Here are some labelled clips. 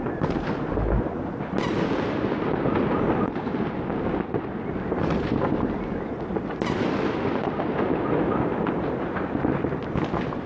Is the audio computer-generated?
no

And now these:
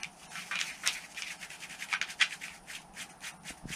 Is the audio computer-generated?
no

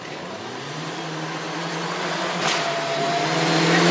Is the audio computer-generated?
no